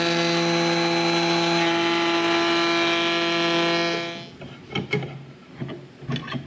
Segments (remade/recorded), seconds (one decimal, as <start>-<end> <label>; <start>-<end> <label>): 0.0-4.6 recorded; 4.6-5.7 remade; 5.7-6.5 recorded